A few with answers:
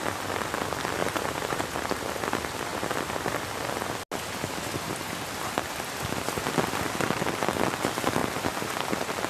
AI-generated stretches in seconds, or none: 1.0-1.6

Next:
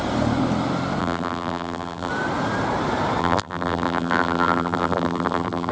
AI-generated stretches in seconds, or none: 1.0-2.1; 3.2-5.7

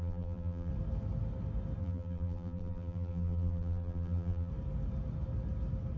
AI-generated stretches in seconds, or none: 0.0-0.7; 1.8-4.5

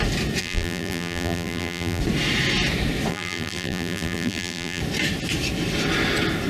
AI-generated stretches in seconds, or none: 0.4-2.0; 3.1-4.8

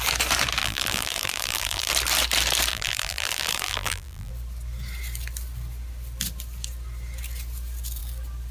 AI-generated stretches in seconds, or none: 0.6-1.9; 2.7-4.3

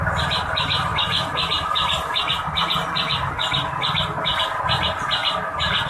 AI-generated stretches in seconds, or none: none